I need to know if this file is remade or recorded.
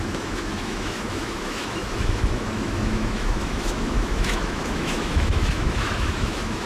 remade